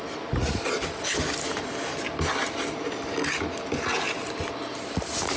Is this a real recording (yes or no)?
yes